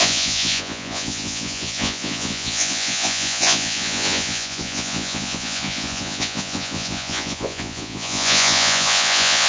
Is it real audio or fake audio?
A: fake